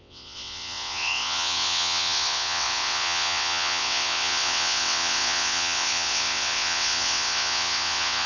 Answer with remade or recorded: remade